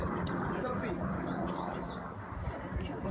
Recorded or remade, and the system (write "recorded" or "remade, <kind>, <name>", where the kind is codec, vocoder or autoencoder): recorded